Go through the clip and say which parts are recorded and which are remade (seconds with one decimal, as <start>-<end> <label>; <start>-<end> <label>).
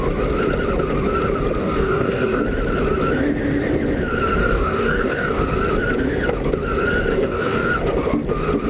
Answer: 0.0-1.6 recorded; 1.6-2.4 remade; 2.4-4.4 recorded; 4.4-5.4 remade; 5.4-7.1 recorded; 7.1-7.7 remade; 7.7-8.7 recorded